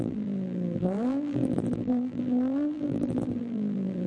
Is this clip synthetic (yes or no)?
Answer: yes